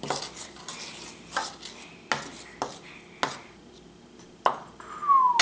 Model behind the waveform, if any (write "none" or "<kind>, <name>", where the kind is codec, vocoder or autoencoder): none